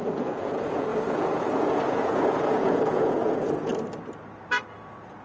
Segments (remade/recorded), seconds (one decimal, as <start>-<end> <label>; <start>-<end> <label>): 0.0-3.7 remade; 3.7-5.2 recorded